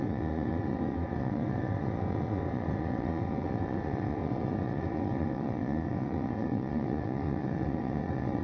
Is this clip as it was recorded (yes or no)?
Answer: no